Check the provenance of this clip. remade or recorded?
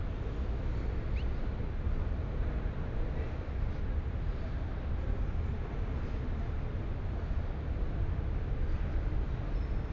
recorded